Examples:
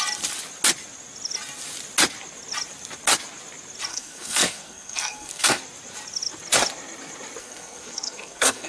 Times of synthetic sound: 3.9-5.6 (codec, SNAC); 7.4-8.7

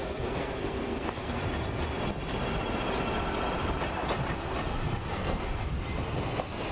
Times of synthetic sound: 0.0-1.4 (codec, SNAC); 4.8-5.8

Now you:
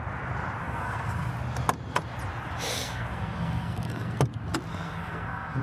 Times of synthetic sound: 0.6-1.3 (codec, SNAC); 2.7-4.2; 4.7-5.6

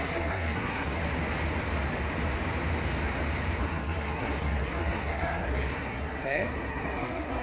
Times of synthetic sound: 0.0-1.0 (codec, SNAC); 3.6-7.4